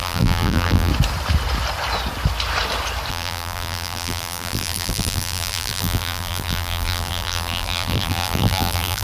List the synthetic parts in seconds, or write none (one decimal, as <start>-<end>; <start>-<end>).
0.0-0.9; 3.1-9.0